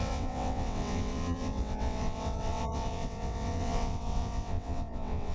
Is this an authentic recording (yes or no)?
no